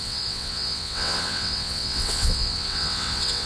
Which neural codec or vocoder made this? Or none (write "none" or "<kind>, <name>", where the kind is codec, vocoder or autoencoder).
vocoder, WaveNeXt